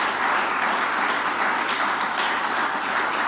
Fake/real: real